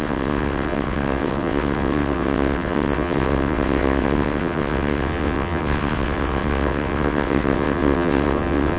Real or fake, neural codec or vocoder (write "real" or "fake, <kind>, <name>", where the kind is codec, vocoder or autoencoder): fake, vocoder, WaveNeXt